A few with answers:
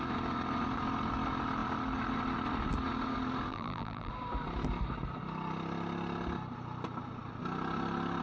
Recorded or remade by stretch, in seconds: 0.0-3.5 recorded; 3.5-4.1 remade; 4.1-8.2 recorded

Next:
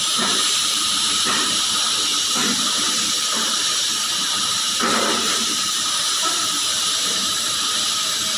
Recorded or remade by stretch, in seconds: 0.0-8.4 remade

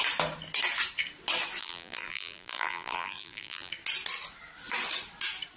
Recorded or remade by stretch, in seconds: 0.0-1.6 recorded; 1.6-3.7 remade; 3.7-5.6 recorded

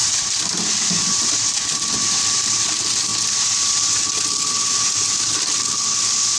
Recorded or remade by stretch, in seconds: 0.0-6.4 recorded

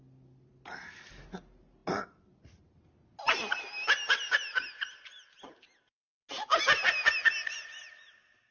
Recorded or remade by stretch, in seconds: 0.0-8.5 recorded

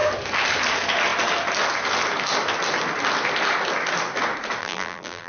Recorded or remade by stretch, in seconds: 0.0-4.6 recorded; 4.6-5.3 remade

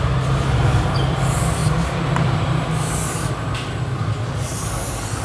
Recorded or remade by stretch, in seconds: 0.0-1.6 recorded; 1.6-3.6 remade; 3.6-5.2 recorded